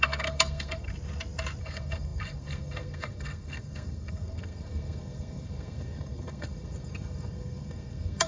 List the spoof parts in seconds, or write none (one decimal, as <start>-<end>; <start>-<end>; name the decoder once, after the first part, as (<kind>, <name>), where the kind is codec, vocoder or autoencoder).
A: 0.0-0.9 (codec, SNAC); 1.6-8.3